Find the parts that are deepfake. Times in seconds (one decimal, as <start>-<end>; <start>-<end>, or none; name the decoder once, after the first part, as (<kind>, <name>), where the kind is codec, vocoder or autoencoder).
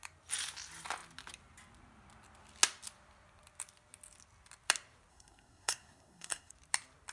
5.1-6.5 (codec, SNAC)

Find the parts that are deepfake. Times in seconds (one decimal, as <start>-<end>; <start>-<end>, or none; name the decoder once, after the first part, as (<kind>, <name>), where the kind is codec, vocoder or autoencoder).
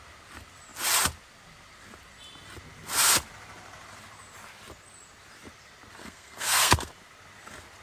6.0-6.9 (codec, SNAC)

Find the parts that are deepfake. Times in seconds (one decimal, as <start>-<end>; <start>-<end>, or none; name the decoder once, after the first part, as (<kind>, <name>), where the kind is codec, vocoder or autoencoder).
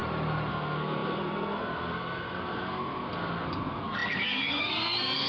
0.5-5.3 (codec, SNAC)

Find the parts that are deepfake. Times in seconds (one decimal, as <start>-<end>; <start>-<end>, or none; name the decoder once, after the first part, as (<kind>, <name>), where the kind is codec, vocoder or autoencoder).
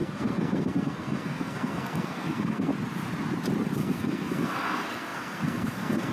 0.0-2.7 (codec, SNAC); 3.6-6.1